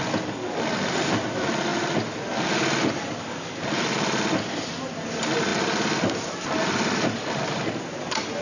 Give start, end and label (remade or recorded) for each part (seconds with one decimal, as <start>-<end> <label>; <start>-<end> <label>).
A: 0.0-8.4 recorded